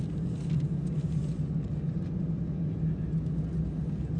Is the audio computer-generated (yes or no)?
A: no